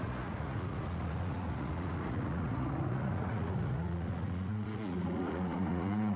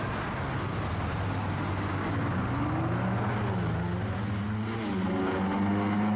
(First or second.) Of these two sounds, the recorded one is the second